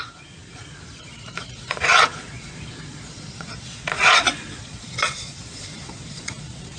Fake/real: fake